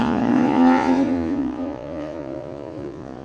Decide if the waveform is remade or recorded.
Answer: remade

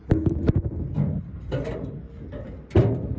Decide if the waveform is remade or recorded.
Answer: recorded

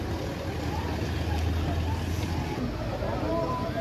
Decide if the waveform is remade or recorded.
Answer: recorded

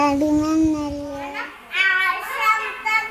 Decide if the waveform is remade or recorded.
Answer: recorded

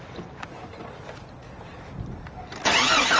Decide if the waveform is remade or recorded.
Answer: recorded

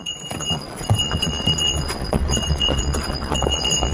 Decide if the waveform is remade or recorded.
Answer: remade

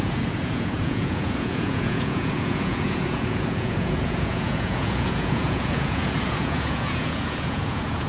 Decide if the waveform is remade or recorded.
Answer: remade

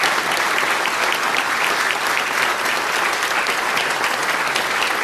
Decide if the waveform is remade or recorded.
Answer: recorded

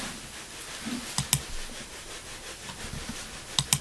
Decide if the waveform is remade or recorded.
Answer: recorded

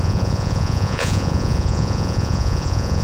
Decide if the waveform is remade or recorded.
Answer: remade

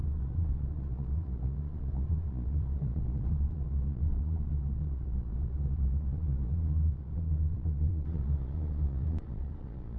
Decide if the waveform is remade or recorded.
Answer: remade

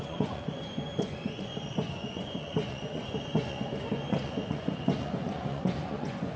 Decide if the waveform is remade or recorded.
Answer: remade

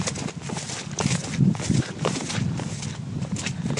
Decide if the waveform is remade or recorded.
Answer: recorded